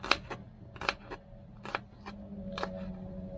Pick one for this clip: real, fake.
real